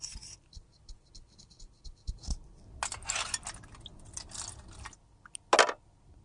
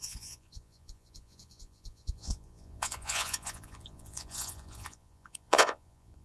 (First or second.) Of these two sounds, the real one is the first